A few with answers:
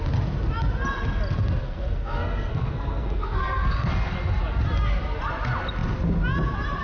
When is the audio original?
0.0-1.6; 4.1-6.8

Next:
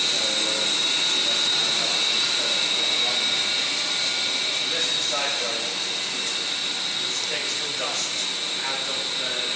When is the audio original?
0.0-1.6; 3.0-9.6